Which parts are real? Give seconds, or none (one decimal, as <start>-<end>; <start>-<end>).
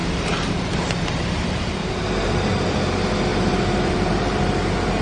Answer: 2.5-3.3; 4.4-5.0